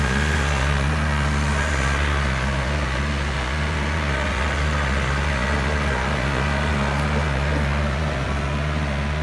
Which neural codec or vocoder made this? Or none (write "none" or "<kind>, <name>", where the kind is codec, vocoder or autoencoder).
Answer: vocoder, Vocos